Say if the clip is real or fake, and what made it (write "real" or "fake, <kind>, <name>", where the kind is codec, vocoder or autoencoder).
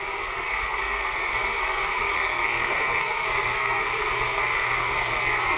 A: fake, codec, SNAC